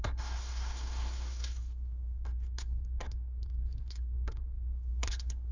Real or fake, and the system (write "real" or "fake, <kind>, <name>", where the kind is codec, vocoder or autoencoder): fake, codec, SNAC